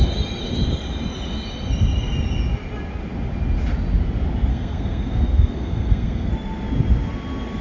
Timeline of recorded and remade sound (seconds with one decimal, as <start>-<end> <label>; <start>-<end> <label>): 0.0-4.5 recorded; 4.5-6.3 remade; 6.3-7.6 recorded